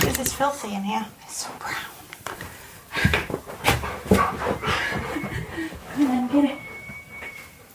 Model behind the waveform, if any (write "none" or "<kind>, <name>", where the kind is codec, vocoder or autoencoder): vocoder, BigVGAN v2